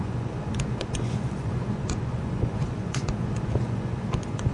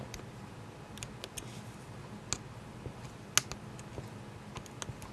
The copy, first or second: first